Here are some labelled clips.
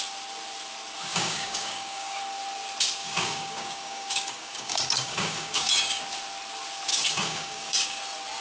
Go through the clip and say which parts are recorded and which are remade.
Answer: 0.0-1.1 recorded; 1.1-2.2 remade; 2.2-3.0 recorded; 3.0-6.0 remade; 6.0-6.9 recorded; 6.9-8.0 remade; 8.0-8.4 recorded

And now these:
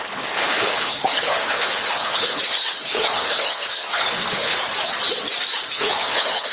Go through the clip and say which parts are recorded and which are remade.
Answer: 0.0-4.5 remade; 4.5-5.7 recorded; 5.7-6.5 remade